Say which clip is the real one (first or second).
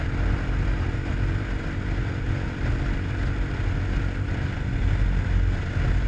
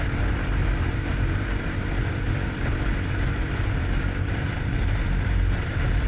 first